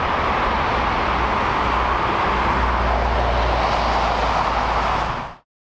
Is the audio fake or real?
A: real